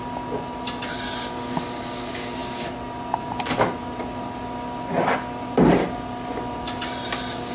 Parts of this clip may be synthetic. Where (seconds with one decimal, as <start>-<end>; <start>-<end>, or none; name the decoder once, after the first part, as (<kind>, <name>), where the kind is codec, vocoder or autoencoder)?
none